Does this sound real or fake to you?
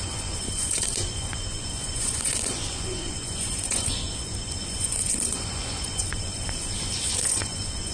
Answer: fake